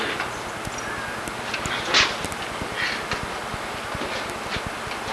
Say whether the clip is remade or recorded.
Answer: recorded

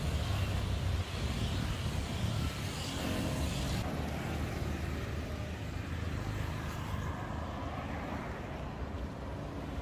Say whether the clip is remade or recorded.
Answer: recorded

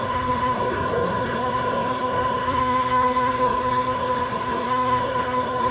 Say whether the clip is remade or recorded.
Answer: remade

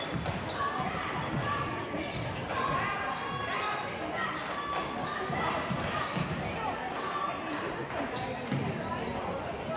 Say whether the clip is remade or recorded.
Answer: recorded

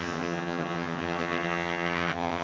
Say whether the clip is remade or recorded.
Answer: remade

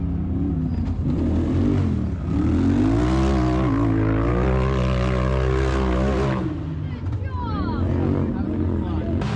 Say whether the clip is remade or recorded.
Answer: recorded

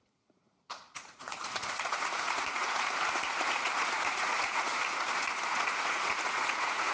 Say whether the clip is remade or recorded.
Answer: remade